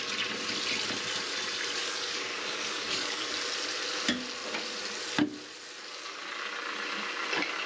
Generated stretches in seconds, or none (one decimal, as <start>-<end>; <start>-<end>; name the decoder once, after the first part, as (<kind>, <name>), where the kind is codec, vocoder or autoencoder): 1.8-3.3 (codec, DAC)